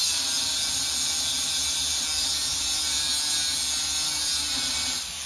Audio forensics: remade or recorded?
recorded